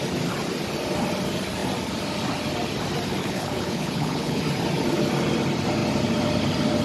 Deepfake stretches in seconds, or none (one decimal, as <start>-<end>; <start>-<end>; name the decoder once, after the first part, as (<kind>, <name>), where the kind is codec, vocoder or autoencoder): 3.2-4.4 (codec, HILCodec)